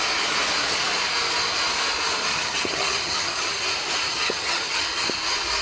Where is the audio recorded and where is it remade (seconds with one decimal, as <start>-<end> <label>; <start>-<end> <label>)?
0.0-2.3 recorded; 2.3-3.6 remade; 3.6-4.1 recorded; 4.1-4.8 remade; 4.8-5.6 recorded